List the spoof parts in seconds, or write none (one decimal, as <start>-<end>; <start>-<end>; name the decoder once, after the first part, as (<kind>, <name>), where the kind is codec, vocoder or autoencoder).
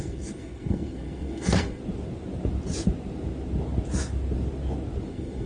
0.0-1.8 (codec, SNAC); 5.1-5.5